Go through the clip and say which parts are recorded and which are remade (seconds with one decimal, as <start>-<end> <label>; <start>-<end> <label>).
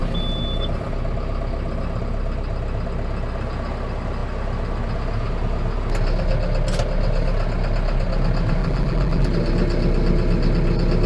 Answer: 0.0-8.6 recorded; 8.6-9.3 remade; 9.3-11.1 recorded